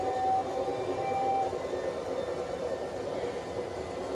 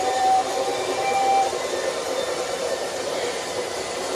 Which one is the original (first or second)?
first